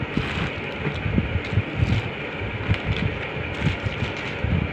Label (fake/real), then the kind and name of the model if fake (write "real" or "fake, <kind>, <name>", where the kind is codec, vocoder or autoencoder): real